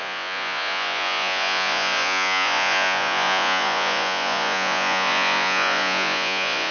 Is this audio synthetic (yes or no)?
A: yes